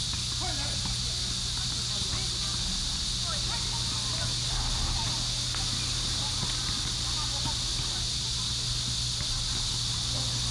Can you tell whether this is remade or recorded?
recorded